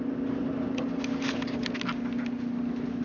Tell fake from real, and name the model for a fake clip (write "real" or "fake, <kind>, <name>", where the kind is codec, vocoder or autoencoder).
real